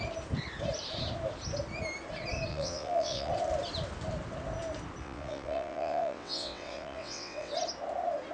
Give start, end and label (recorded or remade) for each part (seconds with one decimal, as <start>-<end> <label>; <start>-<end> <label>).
0.0-2.5 recorded; 2.5-3.3 remade; 3.3-5.0 recorded; 5.0-7.5 remade; 7.5-8.3 recorded

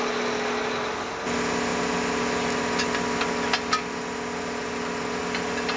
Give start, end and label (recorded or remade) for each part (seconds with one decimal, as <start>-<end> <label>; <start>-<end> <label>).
0.0-5.8 recorded